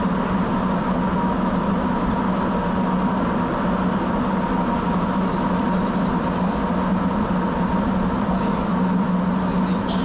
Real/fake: real